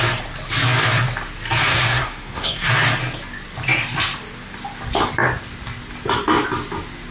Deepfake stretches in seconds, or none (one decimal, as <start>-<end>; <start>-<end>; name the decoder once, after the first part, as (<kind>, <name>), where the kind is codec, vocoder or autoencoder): 1.7-2.7 (codec, SNAC)